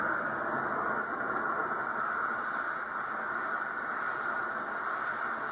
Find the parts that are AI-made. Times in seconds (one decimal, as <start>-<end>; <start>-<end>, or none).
none